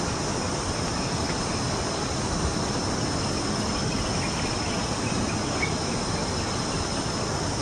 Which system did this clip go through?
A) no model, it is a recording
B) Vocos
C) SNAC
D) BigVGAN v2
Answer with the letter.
A